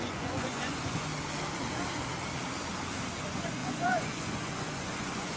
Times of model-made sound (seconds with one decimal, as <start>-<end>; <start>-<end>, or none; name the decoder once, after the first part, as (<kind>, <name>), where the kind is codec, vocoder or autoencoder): 0.0-1.1 (vocoder, Vocos); 3.2-5.4